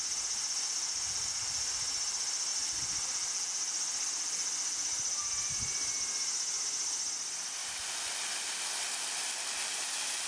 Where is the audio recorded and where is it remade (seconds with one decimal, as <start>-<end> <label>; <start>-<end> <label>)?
0.0-10.3 recorded